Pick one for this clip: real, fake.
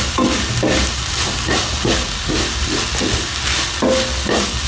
real